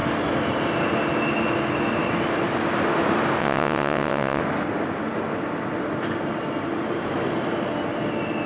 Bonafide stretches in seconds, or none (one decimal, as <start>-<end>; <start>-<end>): 0.0-3.4; 4.4-8.5